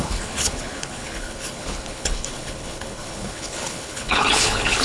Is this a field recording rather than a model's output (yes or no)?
no